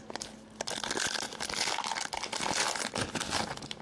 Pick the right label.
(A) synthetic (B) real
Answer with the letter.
B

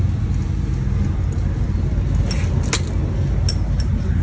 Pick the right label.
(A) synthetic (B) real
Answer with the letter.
B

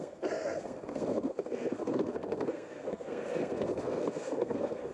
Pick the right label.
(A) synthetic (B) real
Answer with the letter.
A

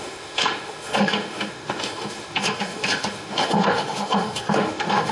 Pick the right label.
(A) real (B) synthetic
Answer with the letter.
B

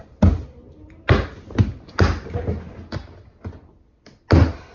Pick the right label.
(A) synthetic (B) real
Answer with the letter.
B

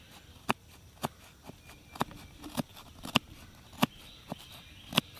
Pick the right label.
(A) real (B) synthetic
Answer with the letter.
A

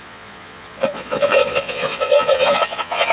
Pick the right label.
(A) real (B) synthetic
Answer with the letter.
B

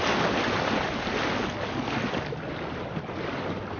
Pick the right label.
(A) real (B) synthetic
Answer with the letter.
A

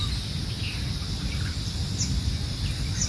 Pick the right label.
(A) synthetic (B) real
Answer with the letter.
B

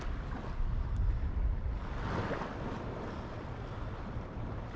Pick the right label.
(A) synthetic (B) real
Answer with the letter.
B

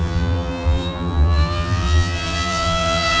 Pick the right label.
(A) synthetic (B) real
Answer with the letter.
A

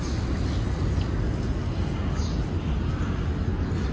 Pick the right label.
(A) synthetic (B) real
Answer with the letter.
B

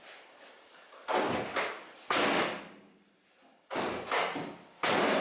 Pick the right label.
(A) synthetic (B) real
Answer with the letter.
B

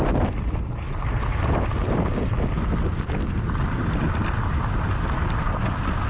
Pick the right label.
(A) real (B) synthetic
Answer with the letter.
A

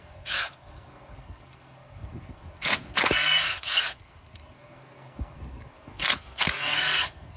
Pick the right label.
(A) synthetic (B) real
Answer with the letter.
A